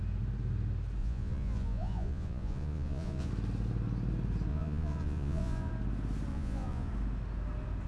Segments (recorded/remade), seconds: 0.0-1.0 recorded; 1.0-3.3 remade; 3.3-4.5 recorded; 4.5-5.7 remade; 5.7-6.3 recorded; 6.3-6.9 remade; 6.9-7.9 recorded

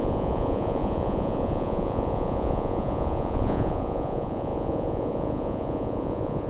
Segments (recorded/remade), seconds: 0.0-6.5 remade

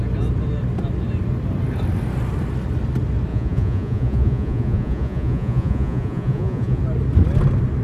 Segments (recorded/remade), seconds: 0.0-3.3 recorded; 3.3-6.8 remade; 6.8-7.8 recorded

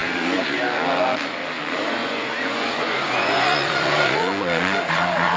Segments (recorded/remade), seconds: 0.0-0.6 remade; 0.6-2.0 recorded; 2.0-5.4 remade

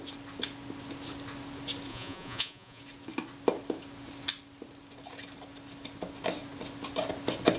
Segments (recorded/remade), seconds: 0.0-1.9 recorded; 1.9-2.8 remade; 2.8-7.6 recorded